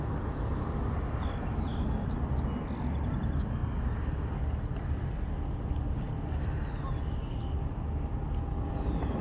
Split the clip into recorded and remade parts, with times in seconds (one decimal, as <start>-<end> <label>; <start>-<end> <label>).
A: 0.0-9.2 recorded